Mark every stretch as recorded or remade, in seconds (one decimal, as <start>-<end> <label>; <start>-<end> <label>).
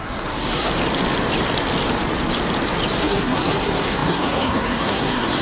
0.0-0.7 remade; 0.7-3.0 recorded; 3.0-5.4 remade